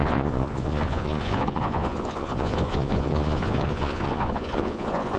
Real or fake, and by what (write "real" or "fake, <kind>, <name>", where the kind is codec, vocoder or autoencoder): fake, vocoder, Vocos